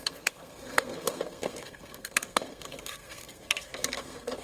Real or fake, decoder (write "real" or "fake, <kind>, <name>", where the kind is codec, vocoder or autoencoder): fake, codec, SNAC